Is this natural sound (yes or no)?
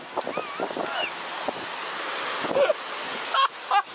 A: yes